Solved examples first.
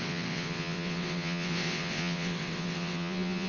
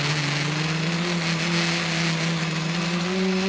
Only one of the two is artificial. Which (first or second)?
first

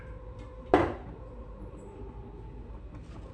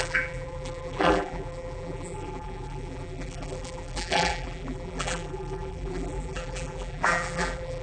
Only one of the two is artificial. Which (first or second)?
second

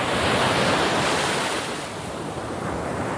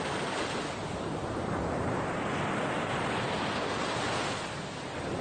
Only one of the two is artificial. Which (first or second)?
second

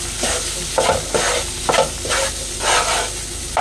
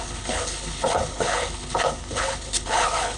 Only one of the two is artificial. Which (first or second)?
second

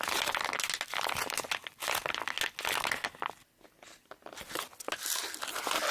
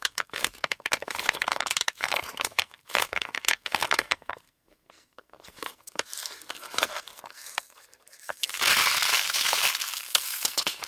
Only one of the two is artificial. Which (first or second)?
second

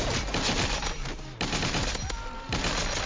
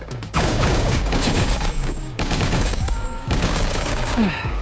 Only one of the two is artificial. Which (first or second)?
second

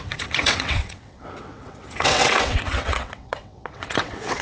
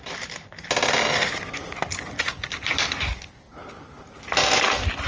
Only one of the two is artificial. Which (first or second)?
first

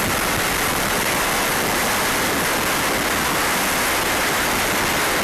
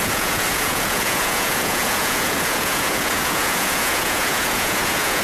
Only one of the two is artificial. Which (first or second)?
second